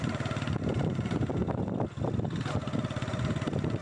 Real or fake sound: real